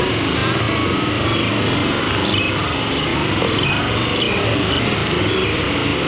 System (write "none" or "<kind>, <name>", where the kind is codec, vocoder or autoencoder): none